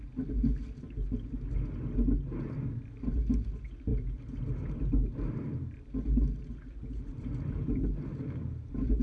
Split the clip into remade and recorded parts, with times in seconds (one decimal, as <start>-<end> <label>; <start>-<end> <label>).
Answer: 0.0-9.0 recorded